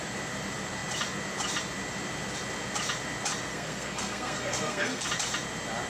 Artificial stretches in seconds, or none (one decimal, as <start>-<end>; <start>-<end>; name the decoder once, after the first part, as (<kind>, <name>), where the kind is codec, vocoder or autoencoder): 3.5-5.1 (codec, SNAC)